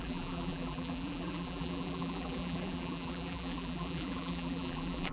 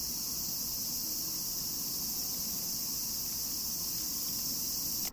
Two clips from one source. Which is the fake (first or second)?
first